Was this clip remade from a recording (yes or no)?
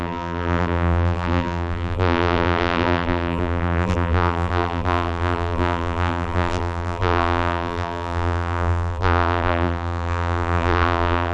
yes